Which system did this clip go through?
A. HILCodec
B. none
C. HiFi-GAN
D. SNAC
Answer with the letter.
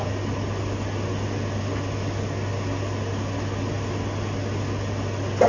B